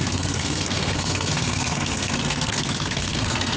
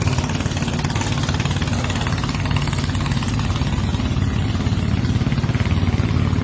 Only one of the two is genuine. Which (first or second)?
second